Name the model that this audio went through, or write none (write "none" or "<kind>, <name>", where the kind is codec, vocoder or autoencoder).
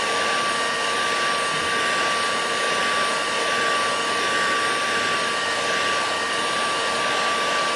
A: vocoder, BigVGAN v2